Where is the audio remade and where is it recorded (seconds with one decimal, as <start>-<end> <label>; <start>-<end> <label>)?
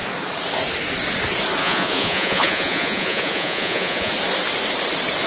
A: 0.0-1.6 recorded; 1.6-4.1 remade; 4.1-5.3 recorded